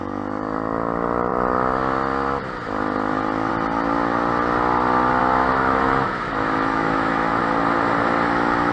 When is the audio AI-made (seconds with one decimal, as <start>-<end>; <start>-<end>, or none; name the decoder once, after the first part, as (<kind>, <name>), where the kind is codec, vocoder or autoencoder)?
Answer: 5.2-7.4 (autoencoder, DAC-VAE)